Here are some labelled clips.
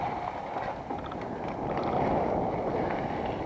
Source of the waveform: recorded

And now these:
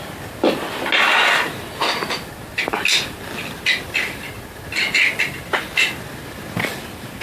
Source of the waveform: recorded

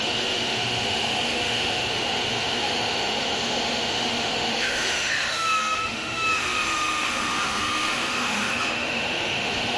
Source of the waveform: remade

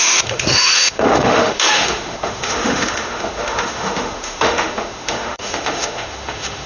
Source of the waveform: remade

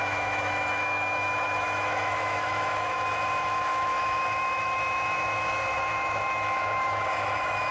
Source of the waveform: remade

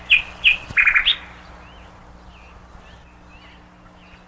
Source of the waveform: recorded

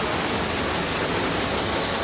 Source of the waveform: recorded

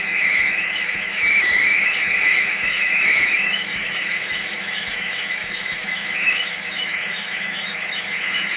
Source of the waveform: remade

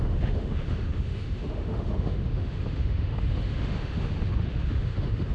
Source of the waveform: remade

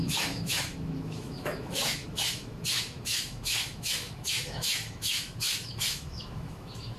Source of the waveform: remade